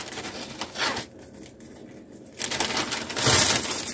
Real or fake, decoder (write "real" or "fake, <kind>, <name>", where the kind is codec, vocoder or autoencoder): real